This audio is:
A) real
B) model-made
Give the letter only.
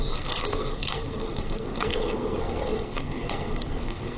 B